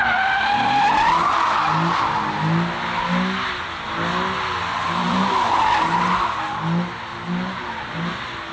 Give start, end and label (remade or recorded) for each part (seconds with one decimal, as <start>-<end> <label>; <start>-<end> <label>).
0.0-5.0 recorded; 5.0-5.7 remade; 5.7-7.1 recorded; 7.1-8.1 remade; 8.1-8.5 recorded